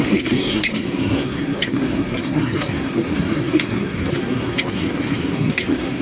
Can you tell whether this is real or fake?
fake